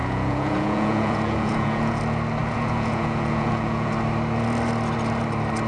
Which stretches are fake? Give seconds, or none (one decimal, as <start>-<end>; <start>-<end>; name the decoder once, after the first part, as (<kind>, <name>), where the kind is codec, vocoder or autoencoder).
0.0-2.0 (vocoder, Vocos); 2.4-3.9